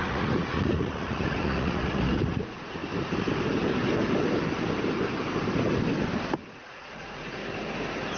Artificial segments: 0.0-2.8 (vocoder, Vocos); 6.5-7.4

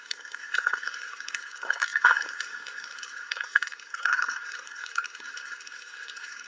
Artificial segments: 0.0-6.5 (codec, SNAC)

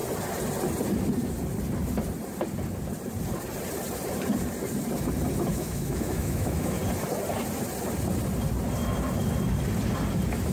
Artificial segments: 5.5-6.8 (autoencoder, DAC-VAE)

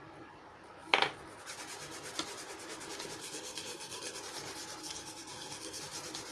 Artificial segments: 3.2-4.2 (codec, SNAC); 4.8-5.8

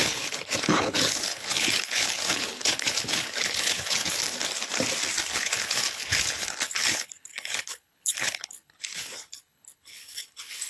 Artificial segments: 0.0-4.2 (codec, HILCodec); 5.3-10.7